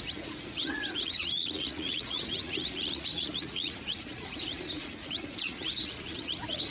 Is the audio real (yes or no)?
no